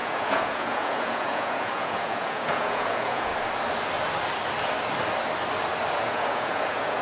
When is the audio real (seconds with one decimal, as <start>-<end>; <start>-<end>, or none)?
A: 3.3-5.9